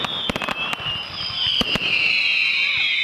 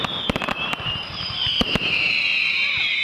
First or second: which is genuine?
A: first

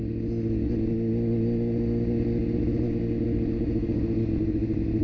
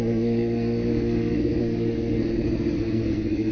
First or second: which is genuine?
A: first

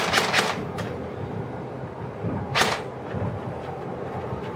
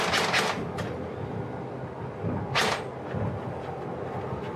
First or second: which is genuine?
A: second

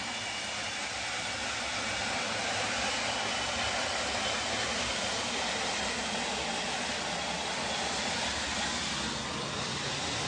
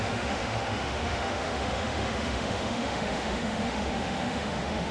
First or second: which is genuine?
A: first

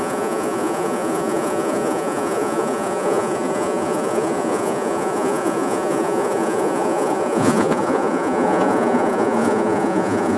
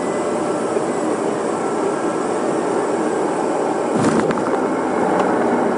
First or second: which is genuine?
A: second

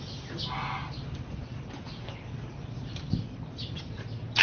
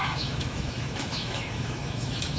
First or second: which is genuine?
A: first